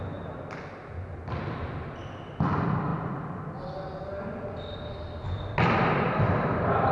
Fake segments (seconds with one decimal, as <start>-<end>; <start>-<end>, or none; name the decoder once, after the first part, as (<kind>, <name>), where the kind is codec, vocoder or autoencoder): none